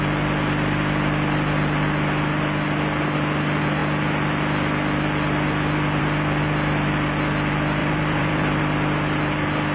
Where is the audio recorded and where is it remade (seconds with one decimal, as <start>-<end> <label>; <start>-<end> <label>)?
0.0-7.8 recorded; 7.8-8.6 remade; 8.6-9.7 recorded